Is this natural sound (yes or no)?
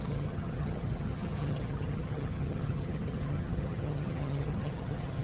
no